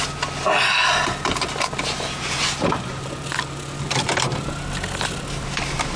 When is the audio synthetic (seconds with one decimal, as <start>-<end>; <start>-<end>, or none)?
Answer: none